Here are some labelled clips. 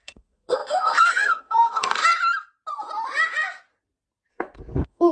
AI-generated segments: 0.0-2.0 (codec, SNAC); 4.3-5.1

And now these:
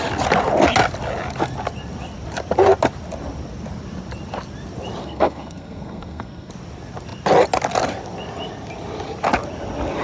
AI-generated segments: 5.0-6.5 (codec, SNAC)

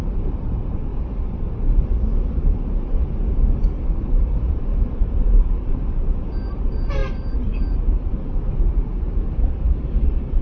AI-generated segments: 0.0-0.9 (vocoder, BigVGAN v2); 4.2-10.4

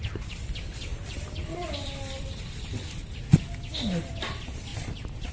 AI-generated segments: 1.4-3.2 (vocoder, BigVGAN v2); 4.7-5.3

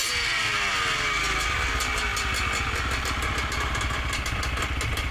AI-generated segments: none

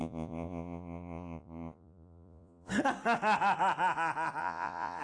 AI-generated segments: 0.0-2.7 (vocoder, Vocos); 4.4-5.0

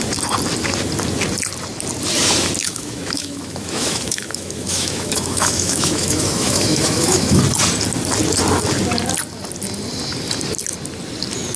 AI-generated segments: 2.6-7.4 (autoencoder, DAC-VAE)

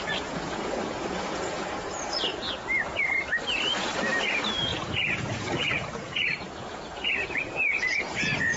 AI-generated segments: 0.0-2.3 (vocoder, Vocos); 4.2-8.6